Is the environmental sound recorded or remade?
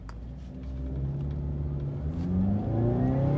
recorded